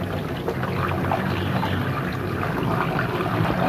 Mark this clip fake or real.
real